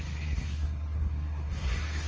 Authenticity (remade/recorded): remade